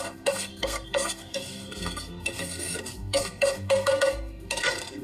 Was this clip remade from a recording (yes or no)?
yes